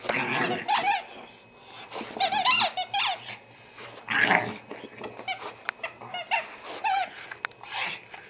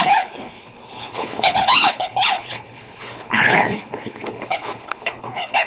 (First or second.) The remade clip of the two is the second